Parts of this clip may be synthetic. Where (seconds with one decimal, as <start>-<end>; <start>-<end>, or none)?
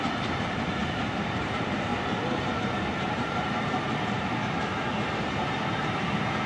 0.0-0.8; 1.4-1.9; 2.5-6.5